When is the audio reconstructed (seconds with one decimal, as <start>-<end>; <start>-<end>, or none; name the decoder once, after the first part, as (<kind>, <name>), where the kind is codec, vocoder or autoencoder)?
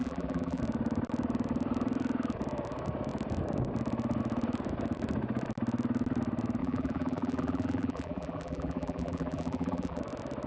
0.0-0.6 (vocoder, BigVGAN v2); 6.6-10.0